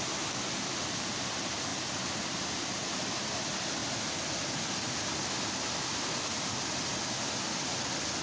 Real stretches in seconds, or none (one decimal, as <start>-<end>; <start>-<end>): 0.0-8.2